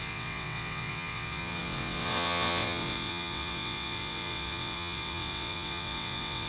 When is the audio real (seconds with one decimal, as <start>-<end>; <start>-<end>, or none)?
none